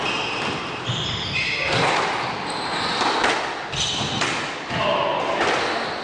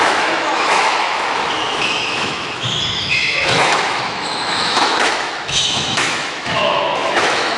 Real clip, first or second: first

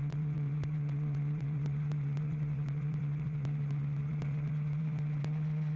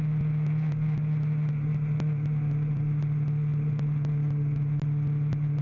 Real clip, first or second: second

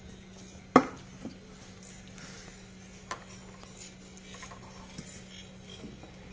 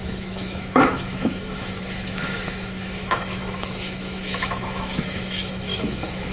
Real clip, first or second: first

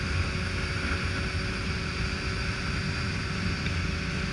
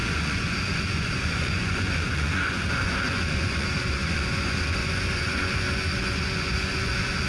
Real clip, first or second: first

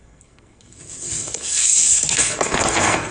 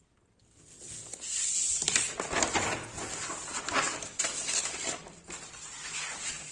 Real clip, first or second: second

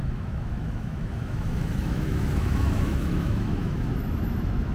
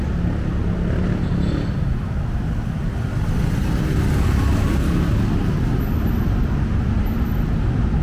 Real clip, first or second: second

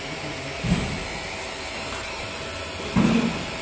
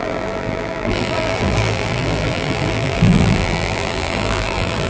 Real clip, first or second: first